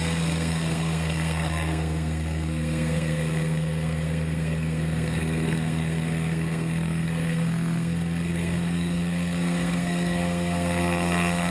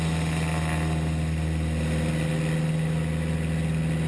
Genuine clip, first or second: second